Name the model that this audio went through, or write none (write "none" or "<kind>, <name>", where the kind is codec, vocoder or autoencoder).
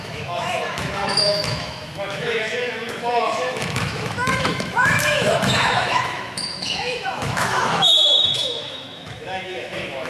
autoencoder, DAC-VAE